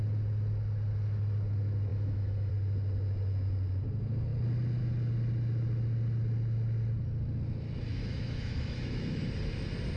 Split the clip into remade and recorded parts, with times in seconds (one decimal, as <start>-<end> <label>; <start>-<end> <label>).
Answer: 0.0-1.9 recorded; 1.9-2.5 remade; 2.5-7.9 recorded; 7.9-9.2 remade; 9.2-10.0 recorded